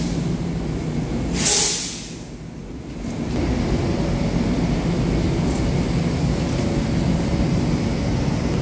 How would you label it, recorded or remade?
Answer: recorded